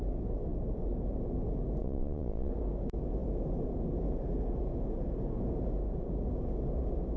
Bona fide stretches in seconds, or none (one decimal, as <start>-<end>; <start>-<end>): 0.0-1.8; 2.5-7.2